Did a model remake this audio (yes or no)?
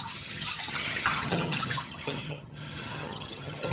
yes